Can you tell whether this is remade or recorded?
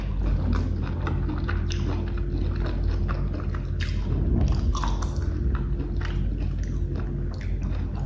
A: recorded